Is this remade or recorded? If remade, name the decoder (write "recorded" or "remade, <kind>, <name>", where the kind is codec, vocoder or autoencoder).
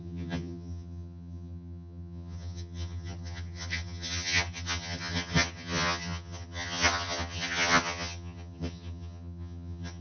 remade, vocoder, HiFi-GAN